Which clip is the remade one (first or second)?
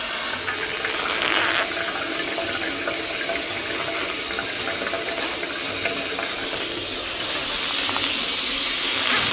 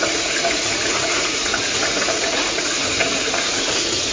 second